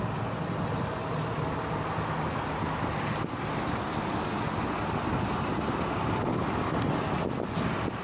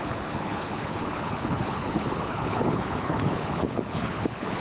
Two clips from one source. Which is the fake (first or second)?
second